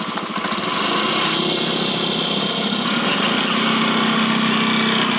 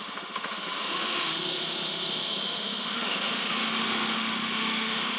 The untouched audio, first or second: first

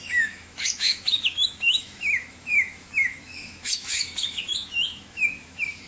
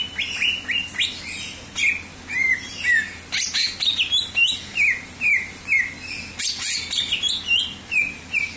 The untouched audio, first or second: second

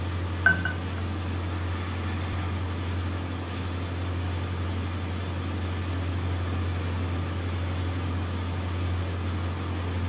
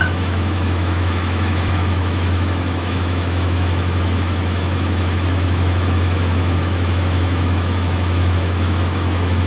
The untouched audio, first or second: first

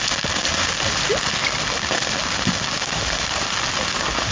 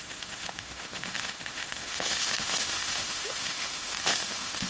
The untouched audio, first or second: first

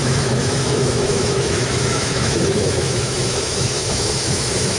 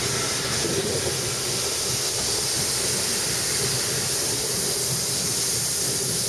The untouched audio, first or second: second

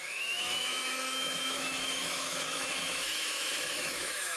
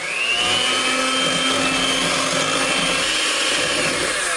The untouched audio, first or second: second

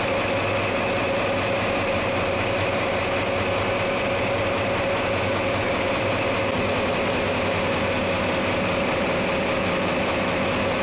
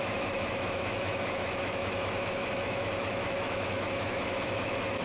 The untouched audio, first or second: first